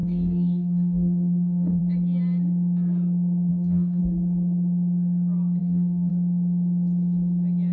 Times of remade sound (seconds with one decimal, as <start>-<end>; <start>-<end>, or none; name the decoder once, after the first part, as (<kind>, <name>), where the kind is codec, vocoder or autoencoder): 0.0-1.8 (codec, DAC); 3.5-4.0; 5.6-6.1

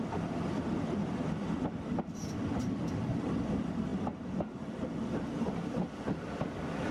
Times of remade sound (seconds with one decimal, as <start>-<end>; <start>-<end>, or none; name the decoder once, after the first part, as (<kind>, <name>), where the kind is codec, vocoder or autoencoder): none

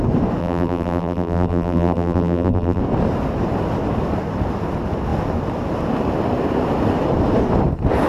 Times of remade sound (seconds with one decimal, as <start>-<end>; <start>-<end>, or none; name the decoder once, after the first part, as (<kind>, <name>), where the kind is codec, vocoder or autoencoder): 0.4-2.8 (vocoder, BigVGAN v2)

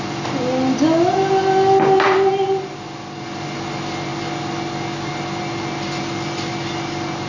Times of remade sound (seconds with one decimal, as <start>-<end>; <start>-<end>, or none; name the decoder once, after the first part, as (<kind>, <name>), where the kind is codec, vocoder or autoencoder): none

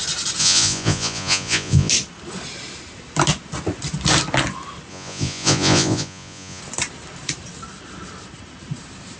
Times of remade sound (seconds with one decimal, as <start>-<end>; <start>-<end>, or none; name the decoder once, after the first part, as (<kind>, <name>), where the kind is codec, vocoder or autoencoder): 0.4-1.9 (vocoder, Vocos); 4.9-6.6